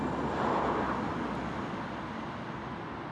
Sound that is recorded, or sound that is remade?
recorded